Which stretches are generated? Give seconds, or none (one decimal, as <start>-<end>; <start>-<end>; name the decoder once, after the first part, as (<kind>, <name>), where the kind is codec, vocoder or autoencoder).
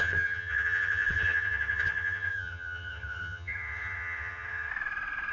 0.0-4.7 (vocoder, HiFi-GAN)